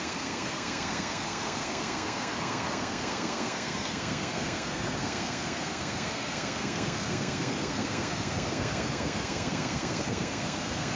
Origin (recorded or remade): remade